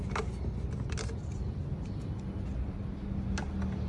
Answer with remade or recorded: recorded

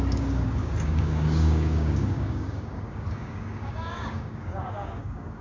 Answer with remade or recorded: remade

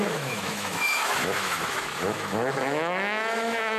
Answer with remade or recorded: remade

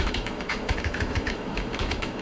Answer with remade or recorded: remade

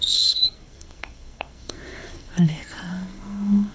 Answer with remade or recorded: remade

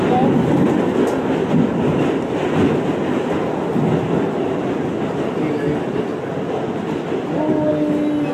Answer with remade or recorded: recorded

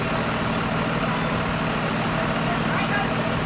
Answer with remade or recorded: recorded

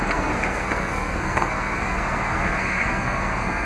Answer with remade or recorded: remade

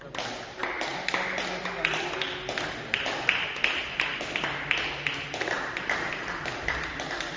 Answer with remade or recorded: recorded